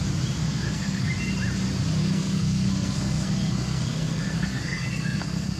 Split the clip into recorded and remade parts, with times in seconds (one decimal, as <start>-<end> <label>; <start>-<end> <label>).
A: 0.0-0.4 recorded; 0.4-1.1 remade; 1.1-2.0 recorded; 2.0-5.6 remade